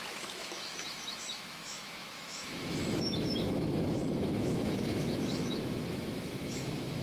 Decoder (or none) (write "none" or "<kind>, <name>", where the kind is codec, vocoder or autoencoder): autoencoder, DAC-VAE